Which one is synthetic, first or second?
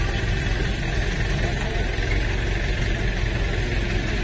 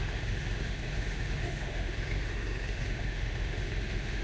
second